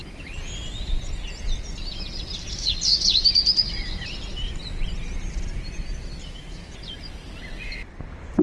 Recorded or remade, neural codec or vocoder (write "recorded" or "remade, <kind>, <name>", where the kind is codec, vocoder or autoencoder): remade, vocoder, BigVGAN v2